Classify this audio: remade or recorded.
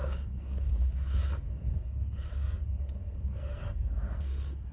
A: remade